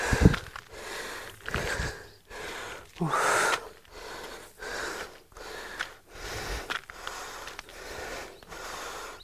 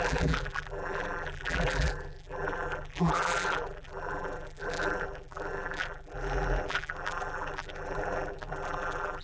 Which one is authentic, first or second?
first